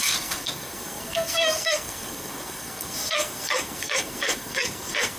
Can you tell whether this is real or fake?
fake